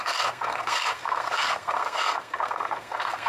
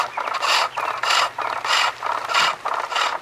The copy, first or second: first